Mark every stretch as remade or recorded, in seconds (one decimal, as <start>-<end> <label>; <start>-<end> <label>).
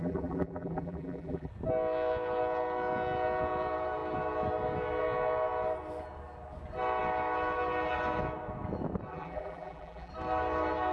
0.0-1.5 remade; 1.5-9.1 recorded; 9.1-10.1 remade; 10.1-10.9 recorded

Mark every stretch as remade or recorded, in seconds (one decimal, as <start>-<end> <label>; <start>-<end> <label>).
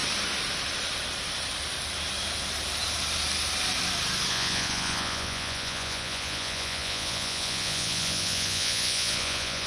0.0-4.3 recorded; 4.3-9.7 remade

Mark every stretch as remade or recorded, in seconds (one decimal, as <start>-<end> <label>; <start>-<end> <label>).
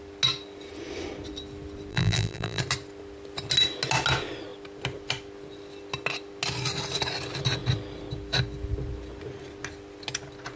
0.0-1.9 recorded; 1.9-2.6 remade; 2.6-10.6 recorded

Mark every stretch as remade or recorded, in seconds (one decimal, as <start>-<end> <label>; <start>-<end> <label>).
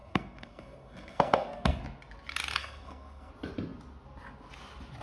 0.0-1.8 remade; 1.8-2.6 recorded; 2.6-3.3 remade; 3.3-5.0 recorded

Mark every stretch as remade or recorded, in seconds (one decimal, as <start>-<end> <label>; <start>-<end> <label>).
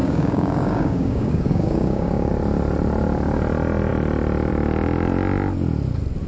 0.0-2.3 remade; 2.3-6.3 recorded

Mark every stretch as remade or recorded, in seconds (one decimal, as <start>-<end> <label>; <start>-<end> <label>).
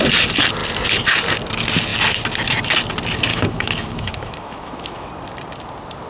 0.0-3.3 recorded; 3.3-5.1 remade; 5.1-6.1 recorded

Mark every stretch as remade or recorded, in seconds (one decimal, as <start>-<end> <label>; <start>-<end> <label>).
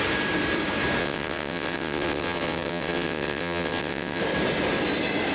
0.0-1.0 recorded; 1.0-4.2 remade; 4.2-5.3 recorded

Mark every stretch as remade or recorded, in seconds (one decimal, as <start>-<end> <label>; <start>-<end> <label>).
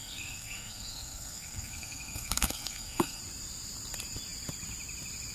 0.0-3.2 remade; 3.2-5.3 recorded